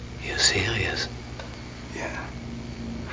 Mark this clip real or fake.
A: real